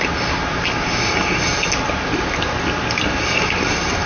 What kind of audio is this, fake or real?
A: real